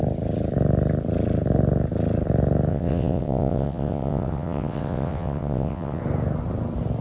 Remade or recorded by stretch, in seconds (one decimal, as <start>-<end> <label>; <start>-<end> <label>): 0.0-2.7 recorded; 2.7-6.0 remade; 6.0-7.0 recorded